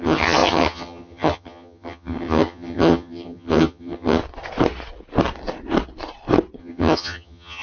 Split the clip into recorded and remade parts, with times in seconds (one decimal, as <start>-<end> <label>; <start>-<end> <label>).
0.0-4.2 remade; 4.2-6.6 recorded; 6.6-7.6 remade